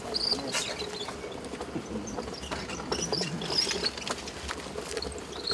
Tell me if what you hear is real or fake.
real